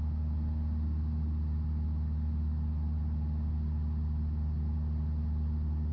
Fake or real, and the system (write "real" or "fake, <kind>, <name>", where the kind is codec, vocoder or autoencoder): real